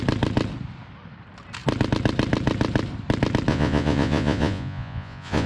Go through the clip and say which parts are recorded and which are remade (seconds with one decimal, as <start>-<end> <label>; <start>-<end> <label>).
0.0-3.5 recorded; 3.5-5.5 remade